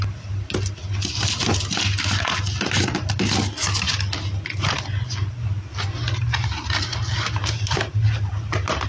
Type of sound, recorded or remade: recorded